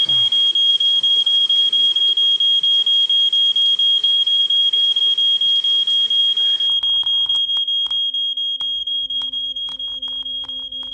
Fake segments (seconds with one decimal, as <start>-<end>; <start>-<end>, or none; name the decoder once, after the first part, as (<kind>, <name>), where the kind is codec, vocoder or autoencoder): 0.7-2.0 (vocoder, BigVGAN v2); 4.0-5.0; 8.8-10.9